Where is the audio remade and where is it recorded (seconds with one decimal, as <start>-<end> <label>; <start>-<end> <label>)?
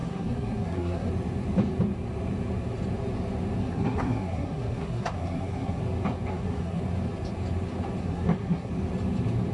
0.0-1.1 remade; 1.1-3.6 recorded; 3.6-5.8 remade; 5.8-6.3 recorded; 6.3-6.8 remade; 6.8-8.0 recorded; 8.0-8.7 remade; 8.7-9.5 recorded